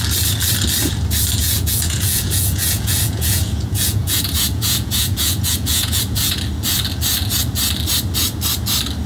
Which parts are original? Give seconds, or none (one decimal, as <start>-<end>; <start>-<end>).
0.0-1.4; 6.4-9.1